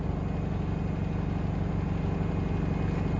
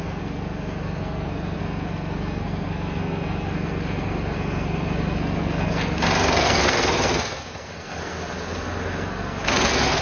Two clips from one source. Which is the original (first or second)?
first